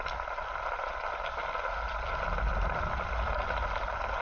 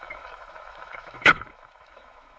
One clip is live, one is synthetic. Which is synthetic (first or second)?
second